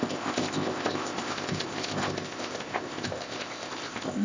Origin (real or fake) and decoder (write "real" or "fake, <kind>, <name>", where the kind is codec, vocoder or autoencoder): fake, codec, ZipCodec